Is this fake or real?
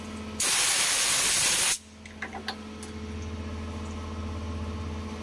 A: real